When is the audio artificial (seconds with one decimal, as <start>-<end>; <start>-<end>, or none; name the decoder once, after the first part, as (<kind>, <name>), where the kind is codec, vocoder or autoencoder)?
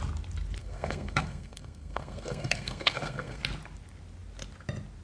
0.6-3.4 (codec, SNAC)